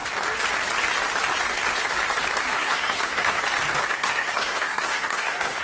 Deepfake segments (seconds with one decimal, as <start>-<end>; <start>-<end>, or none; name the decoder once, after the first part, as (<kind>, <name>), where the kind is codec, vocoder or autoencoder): 2.5-3.4 (codec, SNAC); 4.0-5.6